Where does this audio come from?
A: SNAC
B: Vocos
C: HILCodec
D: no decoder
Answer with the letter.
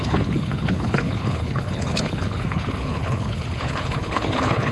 C